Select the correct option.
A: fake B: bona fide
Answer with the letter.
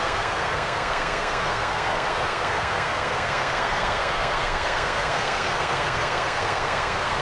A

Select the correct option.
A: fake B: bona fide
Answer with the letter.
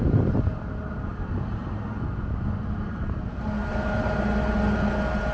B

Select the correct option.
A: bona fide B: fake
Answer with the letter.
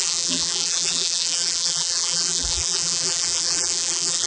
B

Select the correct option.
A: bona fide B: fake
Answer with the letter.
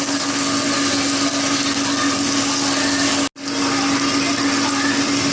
A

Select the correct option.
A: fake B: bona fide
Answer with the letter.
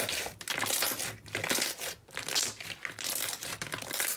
B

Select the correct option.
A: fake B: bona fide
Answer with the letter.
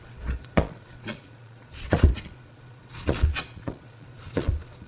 A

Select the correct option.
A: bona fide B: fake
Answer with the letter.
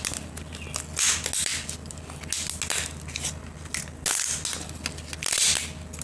A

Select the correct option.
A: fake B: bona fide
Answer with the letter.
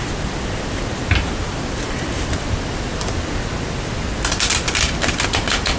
B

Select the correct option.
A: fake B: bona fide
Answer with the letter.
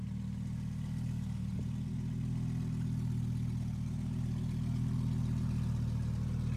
B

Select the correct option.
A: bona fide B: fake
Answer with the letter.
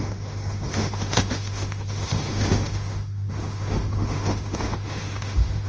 B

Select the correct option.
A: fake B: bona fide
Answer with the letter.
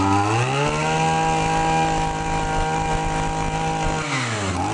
B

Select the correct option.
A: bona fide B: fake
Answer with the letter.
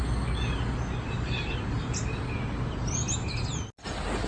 A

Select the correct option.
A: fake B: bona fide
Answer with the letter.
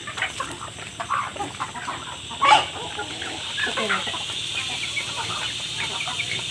B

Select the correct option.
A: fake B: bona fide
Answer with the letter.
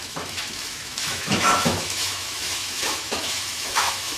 A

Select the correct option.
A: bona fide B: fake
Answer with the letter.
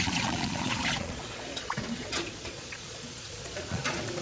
B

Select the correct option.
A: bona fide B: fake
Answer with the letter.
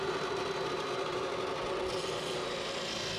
A